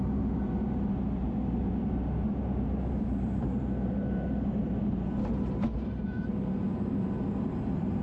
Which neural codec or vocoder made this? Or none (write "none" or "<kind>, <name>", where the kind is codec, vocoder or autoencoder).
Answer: vocoder, BigVGAN v2